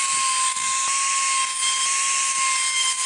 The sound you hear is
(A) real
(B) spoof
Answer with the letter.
A